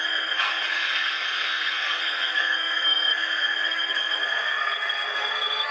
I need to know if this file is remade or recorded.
remade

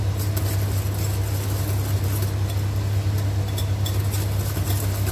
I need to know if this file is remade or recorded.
recorded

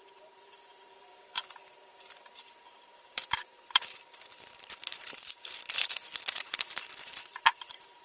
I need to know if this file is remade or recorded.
remade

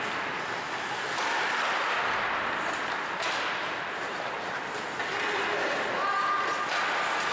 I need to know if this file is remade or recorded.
recorded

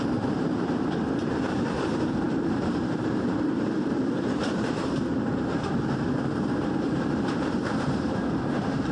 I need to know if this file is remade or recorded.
remade